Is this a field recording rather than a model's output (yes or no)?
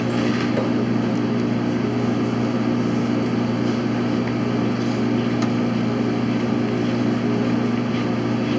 yes